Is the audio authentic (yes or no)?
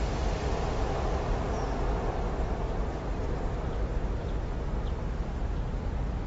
yes